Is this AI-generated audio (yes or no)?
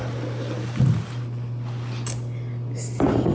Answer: no